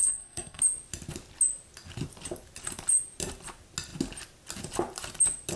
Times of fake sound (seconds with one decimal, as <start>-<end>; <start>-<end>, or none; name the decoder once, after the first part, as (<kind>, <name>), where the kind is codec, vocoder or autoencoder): 0.0-0.6 (codec, SNAC)